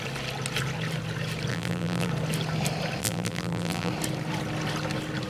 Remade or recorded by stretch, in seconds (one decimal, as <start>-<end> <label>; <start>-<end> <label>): 0.0-1.5 recorded; 1.5-2.1 remade; 2.1-3.0 recorded; 3.0-3.9 remade; 3.9-5.3 recorded